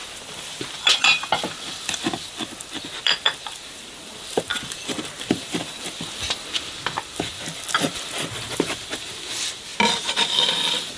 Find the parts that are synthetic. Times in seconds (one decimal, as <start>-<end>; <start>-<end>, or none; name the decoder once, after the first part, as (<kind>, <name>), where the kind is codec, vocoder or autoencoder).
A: 0.0-9.7 (vocoder, BigVGAN v2); 10.3-11.0